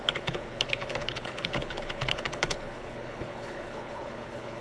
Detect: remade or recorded remade